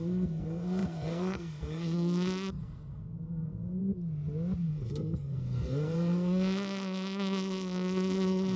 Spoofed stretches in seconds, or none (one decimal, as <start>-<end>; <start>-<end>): 0.0-3.8; 4.6-8.6